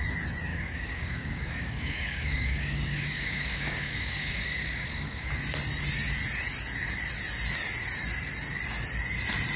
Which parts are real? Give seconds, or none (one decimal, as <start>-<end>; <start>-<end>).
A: 0.0-0.5; 5.4-9.6